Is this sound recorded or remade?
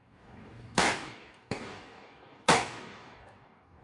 remade